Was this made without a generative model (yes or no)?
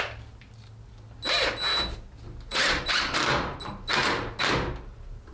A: yes